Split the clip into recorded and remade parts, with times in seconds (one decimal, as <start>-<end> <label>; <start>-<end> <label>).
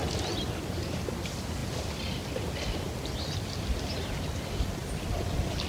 0.0-5.7 recorded